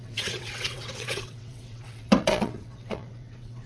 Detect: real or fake fake